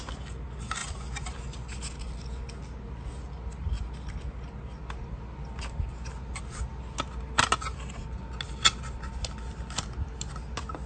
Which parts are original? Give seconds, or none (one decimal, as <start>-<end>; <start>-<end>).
0.0-10.9